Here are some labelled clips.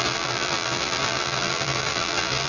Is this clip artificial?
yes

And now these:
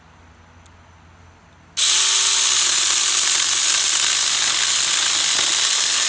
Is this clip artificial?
no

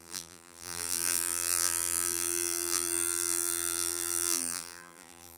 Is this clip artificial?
yes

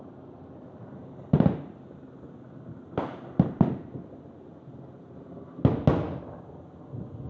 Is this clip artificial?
no